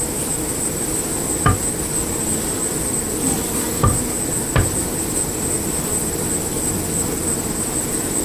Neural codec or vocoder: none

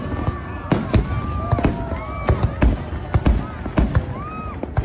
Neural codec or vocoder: none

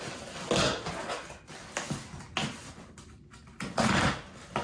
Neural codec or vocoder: none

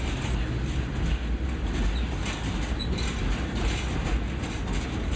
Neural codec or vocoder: none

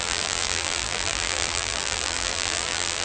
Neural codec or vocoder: vocoder, BigVGAN v2